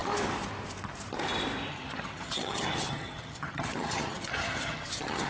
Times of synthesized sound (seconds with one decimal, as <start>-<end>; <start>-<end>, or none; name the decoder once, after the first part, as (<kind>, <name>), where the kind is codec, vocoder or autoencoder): 1.7-5.3 (vocoder, HiFi-GAN)